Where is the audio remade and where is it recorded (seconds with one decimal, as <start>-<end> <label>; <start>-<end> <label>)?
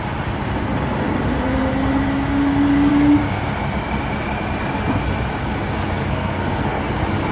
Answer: 0.0-6.0 recorded; 6.0-6.8 remade; 6.8-7.3 recorded